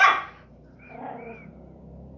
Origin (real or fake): real